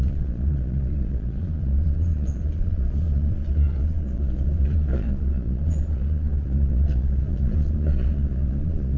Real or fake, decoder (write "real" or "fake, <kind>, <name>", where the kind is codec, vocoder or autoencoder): fake, vocoder, Vocos